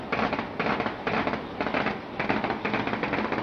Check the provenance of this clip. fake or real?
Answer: real